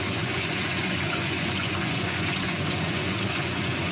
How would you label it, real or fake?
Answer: fake